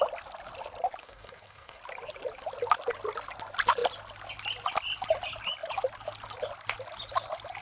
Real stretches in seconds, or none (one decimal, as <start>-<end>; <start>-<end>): 0.0-1.0; 1.8-7.6